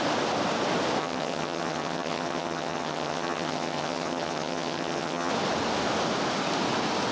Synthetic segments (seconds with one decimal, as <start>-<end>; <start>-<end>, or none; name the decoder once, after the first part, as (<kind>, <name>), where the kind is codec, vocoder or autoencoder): 1.0-5.3 (vocoder, HiFi-GAN)